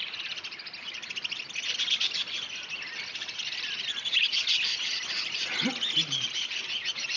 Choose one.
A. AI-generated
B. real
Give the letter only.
A